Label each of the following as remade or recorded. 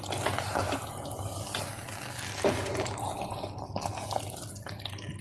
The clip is recorded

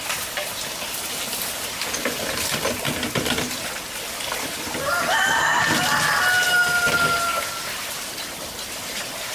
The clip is recorded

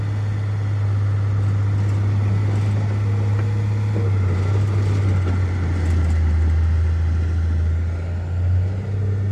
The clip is recorded